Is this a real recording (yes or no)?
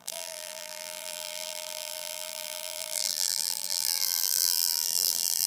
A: no